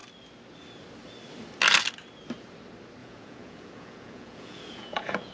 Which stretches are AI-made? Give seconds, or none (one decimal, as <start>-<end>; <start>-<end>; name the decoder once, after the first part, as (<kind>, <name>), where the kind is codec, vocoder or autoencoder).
3.0-5.3 (vocoder, Vocos)